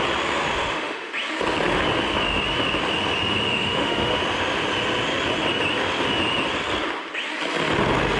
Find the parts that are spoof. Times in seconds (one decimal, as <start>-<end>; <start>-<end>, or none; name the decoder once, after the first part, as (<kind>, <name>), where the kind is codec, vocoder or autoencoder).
0.5-1.1 (autoencoder, DAC-VAE); 3.5-4.2